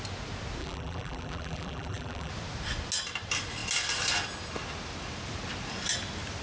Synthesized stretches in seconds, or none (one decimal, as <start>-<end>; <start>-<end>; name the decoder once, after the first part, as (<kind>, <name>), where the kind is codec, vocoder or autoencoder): 0.6-2.3 (vocoder, BigVGAN v2)

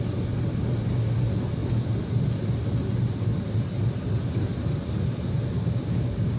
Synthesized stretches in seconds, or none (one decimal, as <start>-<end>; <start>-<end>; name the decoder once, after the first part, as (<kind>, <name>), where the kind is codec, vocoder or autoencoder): 5.6-6.4 (codec, DAC)

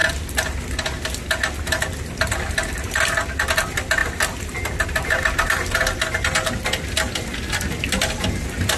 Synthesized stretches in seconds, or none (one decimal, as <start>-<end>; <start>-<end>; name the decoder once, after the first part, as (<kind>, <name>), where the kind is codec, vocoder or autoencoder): none

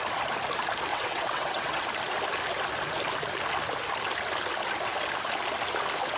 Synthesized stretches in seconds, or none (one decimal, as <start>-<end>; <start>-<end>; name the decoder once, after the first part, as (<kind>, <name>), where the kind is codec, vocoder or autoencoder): 0.9-1.8 (vocoder, WaveNeXt)